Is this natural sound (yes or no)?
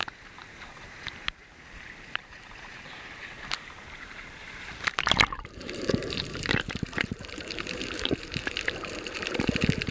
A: no